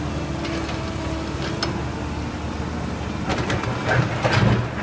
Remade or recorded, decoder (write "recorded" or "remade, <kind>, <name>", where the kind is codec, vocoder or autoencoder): recorded